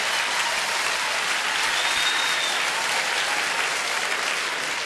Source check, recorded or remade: recorded